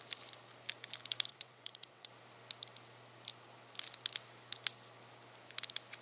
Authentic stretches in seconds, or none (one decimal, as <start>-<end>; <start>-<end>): 0.0-1.3; 2.1-6.0